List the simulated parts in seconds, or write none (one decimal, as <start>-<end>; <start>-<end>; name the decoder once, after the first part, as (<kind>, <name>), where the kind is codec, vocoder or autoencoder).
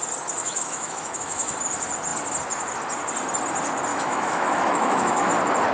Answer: 0.4-1.5 (autoencoder, DAC-VAE); 3.9-5.3